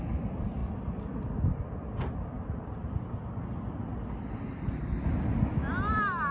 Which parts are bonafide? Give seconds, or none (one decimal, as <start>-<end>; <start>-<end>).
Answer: 0.0-0.6; 1.3-6.3